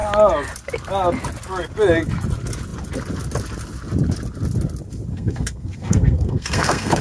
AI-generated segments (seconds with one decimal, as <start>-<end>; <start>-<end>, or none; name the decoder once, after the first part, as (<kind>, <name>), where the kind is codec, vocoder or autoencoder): 5.1-7.0 (codec, SNAC)